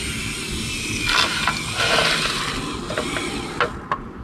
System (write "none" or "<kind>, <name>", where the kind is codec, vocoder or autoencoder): none